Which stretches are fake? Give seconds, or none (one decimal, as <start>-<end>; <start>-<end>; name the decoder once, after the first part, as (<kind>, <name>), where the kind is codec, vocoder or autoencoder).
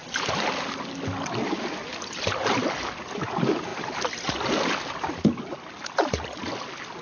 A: none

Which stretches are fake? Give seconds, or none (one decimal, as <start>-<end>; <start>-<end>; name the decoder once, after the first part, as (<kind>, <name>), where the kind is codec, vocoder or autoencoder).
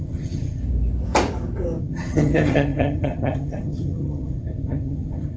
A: 0.0-0.6 (vocoder, HiFi-GAN); 1.8-5.4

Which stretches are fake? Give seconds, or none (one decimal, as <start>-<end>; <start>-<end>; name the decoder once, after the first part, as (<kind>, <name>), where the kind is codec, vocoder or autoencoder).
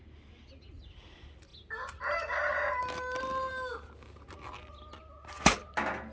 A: none